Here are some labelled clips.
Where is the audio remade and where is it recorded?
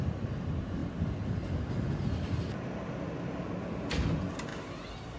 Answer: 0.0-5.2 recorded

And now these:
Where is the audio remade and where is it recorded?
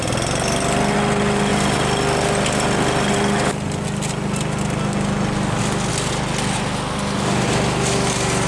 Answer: 0.0-8.5 recorded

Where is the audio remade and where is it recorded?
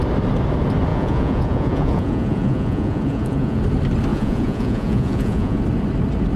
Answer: 0.0-0.9 recorded; 0.9-3.6 remade; 3.6-4.1 recorded; 4.1-5.6 remade; 5.6-6.4 recorded